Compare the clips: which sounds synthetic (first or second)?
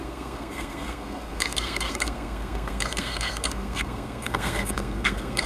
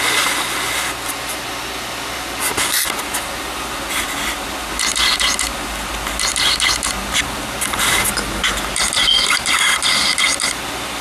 first